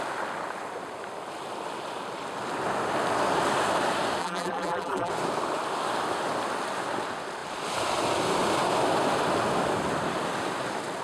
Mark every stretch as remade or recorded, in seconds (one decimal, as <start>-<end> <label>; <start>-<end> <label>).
0.0-4.2 recorded; 4.2-5.1 remade; 5.1-11.0 recorded